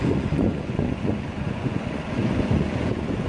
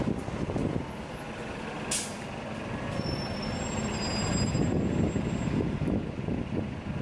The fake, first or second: first